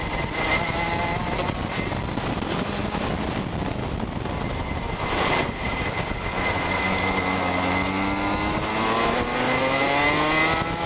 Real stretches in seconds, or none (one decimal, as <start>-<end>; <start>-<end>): 0.0-10.9

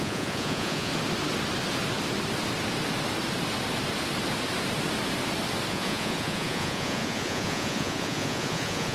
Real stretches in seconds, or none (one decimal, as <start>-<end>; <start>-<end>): 0.9-5.7

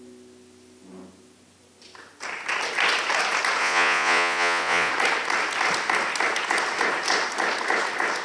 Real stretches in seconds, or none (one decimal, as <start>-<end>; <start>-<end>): 0.0-3.6; 4.9-8.2

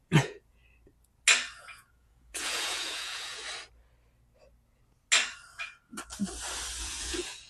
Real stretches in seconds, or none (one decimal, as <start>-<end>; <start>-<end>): 0.6-1.6; 3.4-6.8

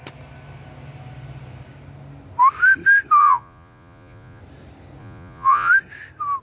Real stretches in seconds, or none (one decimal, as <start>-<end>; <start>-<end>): 0.0-3.2; 4.4-5.0; 5.7-6.4

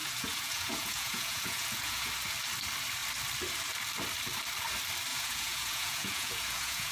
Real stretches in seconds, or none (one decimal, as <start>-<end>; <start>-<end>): 2.1-5.1